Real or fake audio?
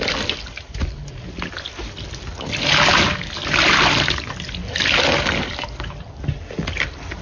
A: real